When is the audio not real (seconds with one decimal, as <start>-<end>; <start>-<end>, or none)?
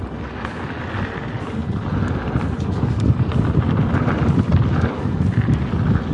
none